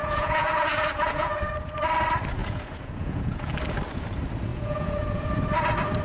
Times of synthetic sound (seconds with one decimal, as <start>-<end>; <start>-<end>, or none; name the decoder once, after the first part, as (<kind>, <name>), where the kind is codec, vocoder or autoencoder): 0.0-1.4 (vocoder, Vocos); 2.4-3.5; 4.5-5.2